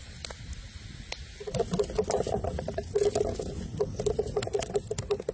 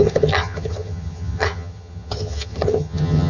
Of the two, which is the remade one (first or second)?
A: second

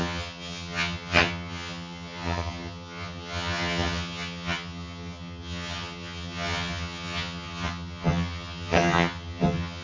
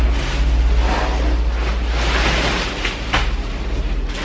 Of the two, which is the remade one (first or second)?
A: first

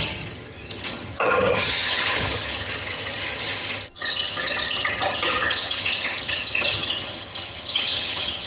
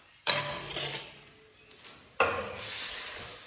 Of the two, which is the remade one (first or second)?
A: first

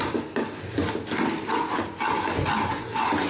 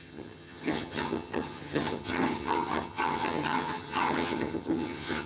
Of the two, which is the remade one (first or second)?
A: second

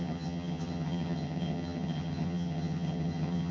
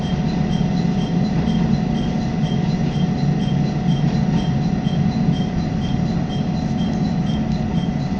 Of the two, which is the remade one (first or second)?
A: first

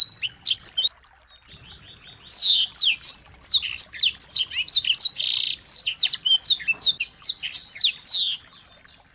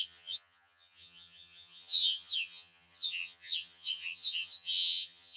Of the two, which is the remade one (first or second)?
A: second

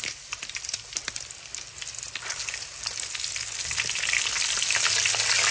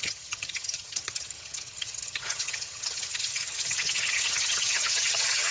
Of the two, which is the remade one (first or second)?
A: second